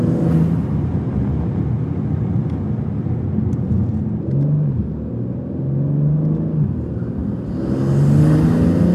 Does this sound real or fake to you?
real